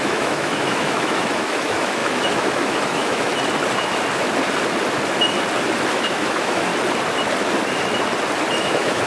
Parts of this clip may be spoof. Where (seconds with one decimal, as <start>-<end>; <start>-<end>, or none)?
0.0-3.3; 5.9-6.7; 8.6-9.1